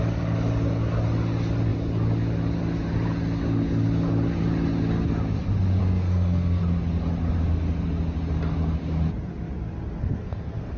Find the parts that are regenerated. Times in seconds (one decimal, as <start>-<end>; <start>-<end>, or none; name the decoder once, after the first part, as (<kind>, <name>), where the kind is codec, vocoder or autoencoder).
5.8-6.6 (codec, SNAC); 10.0-10.8